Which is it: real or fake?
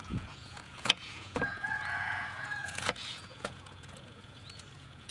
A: fake